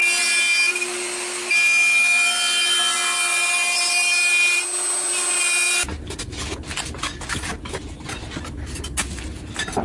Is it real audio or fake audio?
real